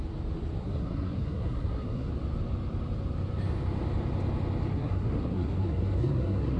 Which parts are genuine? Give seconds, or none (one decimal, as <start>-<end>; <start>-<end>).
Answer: 0.0-0.6; 2.1-4.7

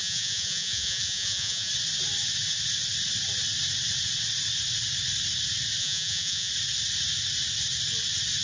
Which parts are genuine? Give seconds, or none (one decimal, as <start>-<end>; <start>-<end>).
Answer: 1.7-5.8; 6.5-8.4

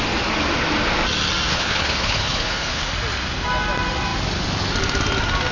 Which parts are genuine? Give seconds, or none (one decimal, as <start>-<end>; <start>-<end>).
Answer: 0.0-1.5; 2.9-5.5

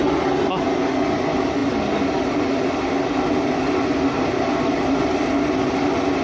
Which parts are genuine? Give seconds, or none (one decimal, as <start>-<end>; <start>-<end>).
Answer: 0.0-6.2